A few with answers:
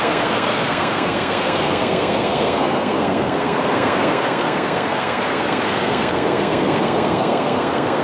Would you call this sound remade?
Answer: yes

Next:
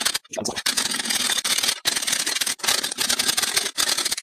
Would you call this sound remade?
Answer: yes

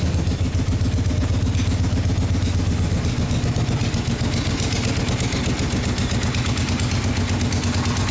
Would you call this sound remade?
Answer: no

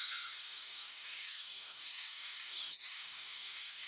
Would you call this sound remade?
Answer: yes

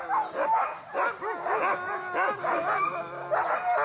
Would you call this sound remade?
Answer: no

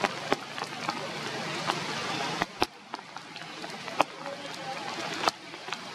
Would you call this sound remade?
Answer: no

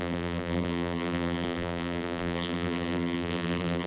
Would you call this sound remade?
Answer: yes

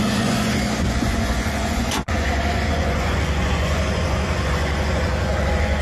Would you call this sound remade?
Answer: yes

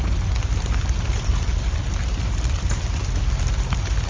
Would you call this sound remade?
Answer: no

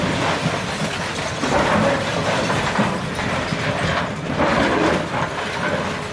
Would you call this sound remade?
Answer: yes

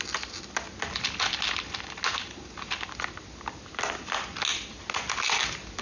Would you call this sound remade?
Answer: no